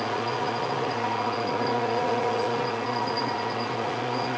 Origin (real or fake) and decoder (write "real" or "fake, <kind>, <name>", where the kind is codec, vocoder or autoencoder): fake, vocoder, Vocos